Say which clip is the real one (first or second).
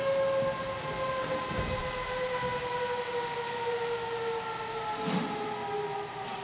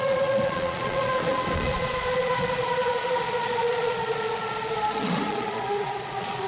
first